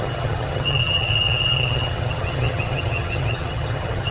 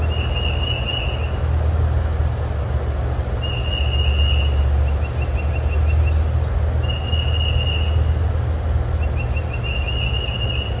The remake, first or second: first